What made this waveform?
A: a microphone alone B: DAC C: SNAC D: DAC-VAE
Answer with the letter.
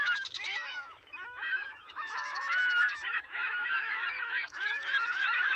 D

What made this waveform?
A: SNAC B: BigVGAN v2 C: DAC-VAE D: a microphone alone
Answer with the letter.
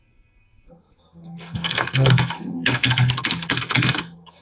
A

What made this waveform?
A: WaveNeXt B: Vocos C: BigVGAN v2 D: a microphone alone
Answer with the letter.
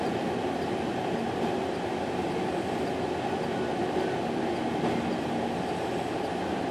D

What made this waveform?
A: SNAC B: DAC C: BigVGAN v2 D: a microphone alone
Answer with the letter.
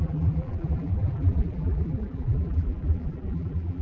C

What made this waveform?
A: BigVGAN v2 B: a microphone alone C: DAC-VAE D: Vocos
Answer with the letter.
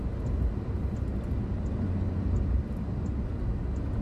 B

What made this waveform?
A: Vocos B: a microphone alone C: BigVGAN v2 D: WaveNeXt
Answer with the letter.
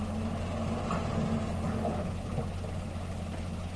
B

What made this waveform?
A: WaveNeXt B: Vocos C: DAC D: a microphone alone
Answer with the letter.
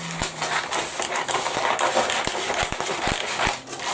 D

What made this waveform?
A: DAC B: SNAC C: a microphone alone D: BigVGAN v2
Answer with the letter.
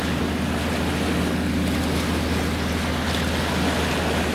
C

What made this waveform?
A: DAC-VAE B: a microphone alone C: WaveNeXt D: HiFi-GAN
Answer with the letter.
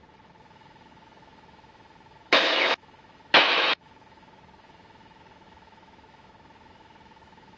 A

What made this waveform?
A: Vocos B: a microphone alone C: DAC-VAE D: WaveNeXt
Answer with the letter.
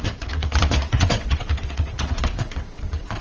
D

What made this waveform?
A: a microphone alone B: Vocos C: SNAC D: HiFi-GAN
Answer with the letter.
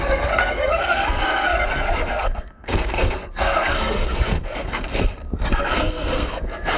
C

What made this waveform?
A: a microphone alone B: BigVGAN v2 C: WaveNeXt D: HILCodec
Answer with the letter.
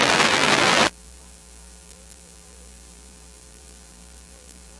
B